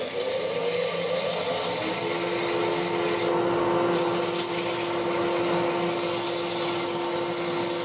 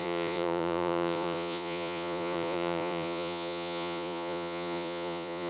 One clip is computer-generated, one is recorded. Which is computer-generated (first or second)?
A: second